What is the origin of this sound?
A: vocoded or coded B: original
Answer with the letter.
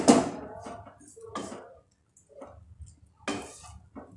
B